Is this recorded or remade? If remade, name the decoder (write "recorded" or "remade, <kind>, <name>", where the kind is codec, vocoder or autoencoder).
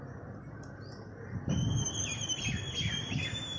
recorded